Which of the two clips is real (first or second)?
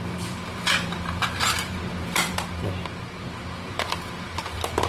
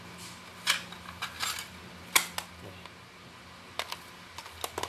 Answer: second